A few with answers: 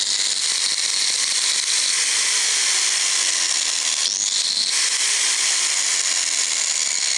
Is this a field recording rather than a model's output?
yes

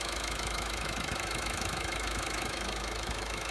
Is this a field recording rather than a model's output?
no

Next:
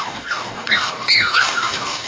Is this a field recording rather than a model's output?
no